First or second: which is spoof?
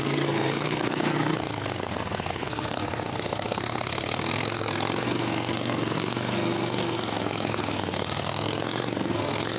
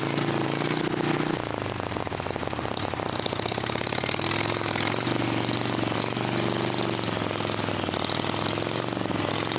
first